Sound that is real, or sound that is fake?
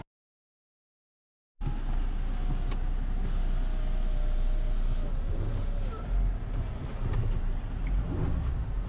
real